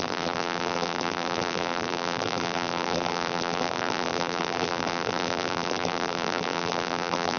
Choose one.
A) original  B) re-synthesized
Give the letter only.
B